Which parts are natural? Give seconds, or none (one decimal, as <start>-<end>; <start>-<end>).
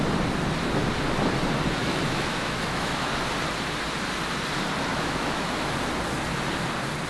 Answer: 0.0-1.8; 3.1-4.9; 5.7-7.1